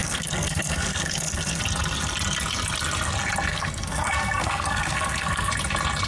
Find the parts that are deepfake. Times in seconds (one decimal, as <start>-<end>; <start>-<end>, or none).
0.0-1.6; 3.5-5.5